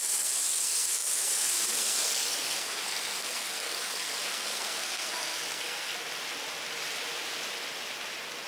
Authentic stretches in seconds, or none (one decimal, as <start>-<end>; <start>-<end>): 5.9-8.5

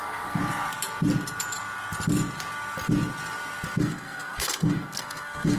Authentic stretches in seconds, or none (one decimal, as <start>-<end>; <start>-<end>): 0.4-3.8

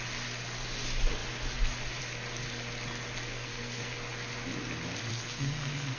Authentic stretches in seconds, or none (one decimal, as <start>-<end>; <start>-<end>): 0.0-3.3; 3.9-5.1

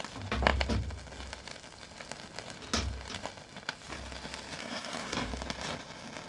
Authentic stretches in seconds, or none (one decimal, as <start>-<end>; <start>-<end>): 0.0-4.6; 5.3-6.3